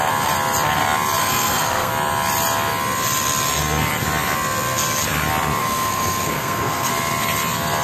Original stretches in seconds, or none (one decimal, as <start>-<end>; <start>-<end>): 0.0-1.2; 1.9-5.6; 6.9-7.8